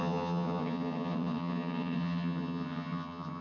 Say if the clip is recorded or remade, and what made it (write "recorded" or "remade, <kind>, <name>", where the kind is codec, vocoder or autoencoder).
remade, vocoder, HiFi-GAN